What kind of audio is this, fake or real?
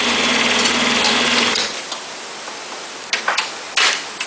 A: real